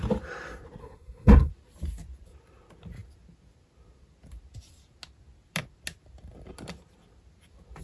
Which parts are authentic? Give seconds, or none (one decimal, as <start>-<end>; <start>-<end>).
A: 0.0-0.8; 1.5-7.8

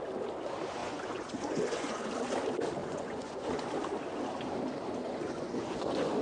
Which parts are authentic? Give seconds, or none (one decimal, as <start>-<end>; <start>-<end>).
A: 0.0-0.8; 2.1-2.8; 3.6-5.0

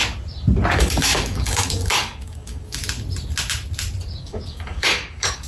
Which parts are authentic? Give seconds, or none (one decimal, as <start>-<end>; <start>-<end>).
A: 0.0-0.7; 2.8-4.2